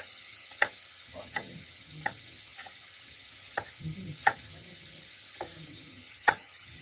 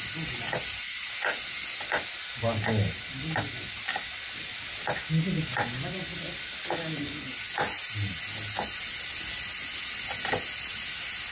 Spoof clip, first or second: first